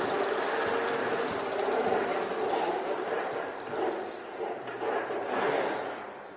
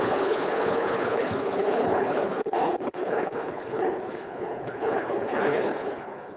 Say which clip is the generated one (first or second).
second